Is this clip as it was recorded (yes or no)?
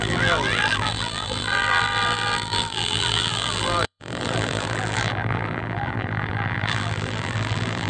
no